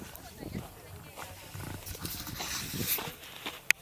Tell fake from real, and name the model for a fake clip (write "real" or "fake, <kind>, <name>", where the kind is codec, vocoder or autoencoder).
real